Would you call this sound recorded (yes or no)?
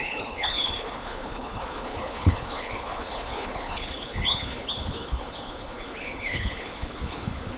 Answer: no